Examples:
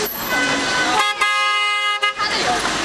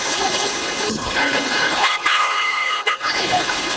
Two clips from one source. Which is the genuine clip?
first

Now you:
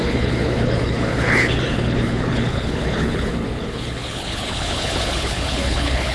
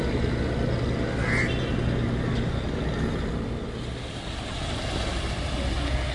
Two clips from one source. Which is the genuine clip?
second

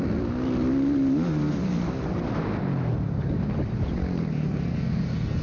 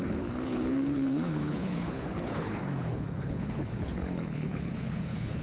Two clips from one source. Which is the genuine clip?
first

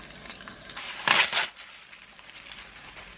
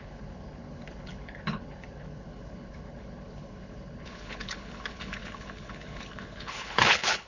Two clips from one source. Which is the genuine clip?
first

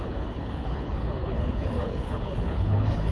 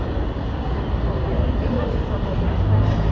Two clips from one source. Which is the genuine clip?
second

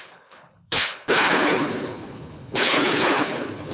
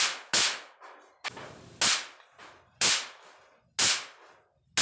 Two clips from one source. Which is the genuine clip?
second